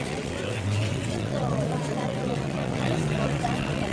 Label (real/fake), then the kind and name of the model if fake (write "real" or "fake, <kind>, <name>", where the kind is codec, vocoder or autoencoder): fake, vocoder, WaveNeXt